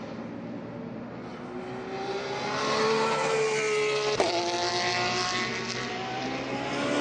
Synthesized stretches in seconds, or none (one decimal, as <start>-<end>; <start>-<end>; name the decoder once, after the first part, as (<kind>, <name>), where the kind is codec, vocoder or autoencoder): none